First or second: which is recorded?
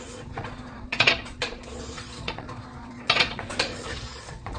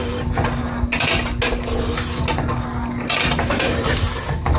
second